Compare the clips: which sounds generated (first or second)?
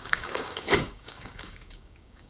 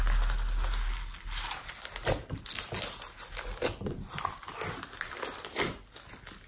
first